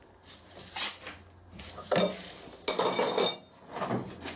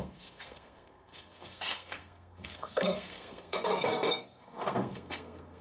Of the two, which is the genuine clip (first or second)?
first